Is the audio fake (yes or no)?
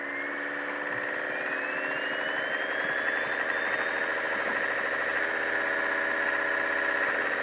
no